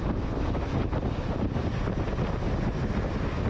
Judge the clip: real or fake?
real